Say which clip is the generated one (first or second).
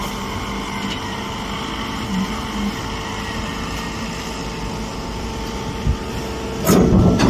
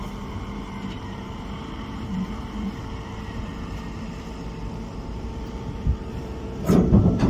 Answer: second